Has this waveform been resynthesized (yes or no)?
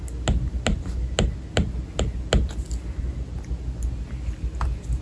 no